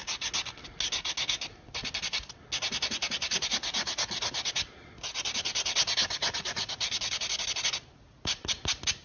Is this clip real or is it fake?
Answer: real